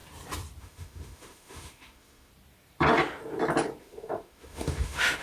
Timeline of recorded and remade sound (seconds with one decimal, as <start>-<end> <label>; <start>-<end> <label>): 0.0-0.6 recorded; 0.6-2.3 remade; 2.3-3.8 recorded; 3.8-5.2 remade